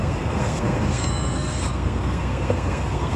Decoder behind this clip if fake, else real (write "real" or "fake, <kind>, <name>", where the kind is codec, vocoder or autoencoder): fake, codec, SNAC